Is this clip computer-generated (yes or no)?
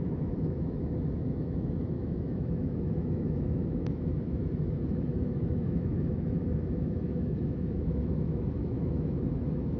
yes